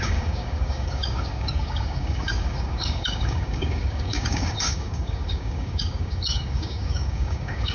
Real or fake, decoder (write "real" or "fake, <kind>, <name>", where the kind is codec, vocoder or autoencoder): fake, codec, DAC